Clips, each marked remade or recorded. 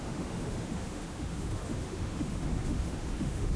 remade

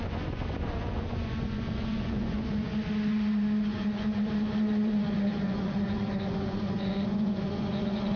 remade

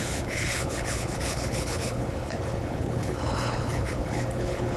remade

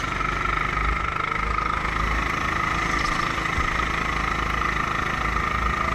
recorded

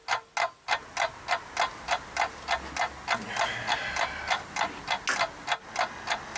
recorded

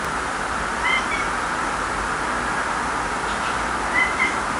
recorded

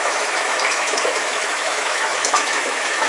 remade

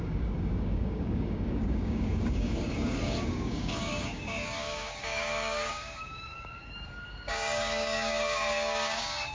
remade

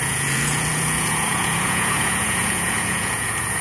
remade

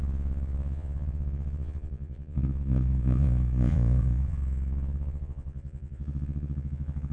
remade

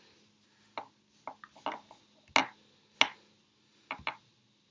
recorded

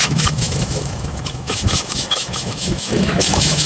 remade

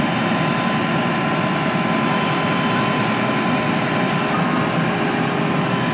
recorded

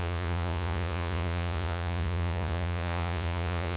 remade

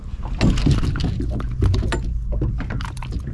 recorded